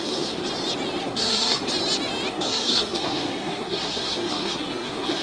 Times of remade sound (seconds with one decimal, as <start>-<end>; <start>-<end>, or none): 0.0-0.4; 1.0-1.6; 2.3-5.2